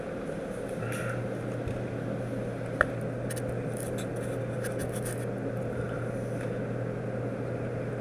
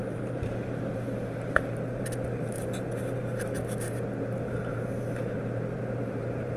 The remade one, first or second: second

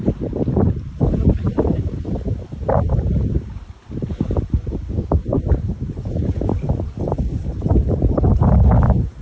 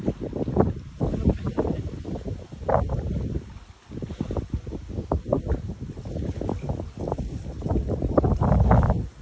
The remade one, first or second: first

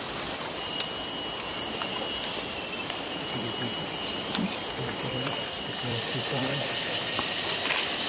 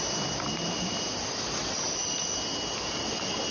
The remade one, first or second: first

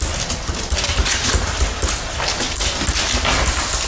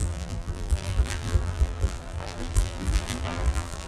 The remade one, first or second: second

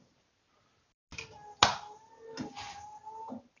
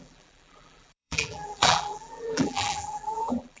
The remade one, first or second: second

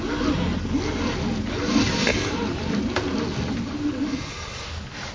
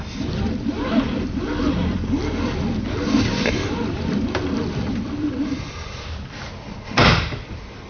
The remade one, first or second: second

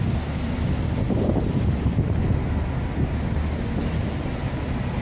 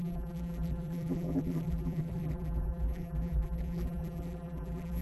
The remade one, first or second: second